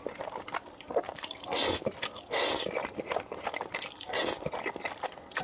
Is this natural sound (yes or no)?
no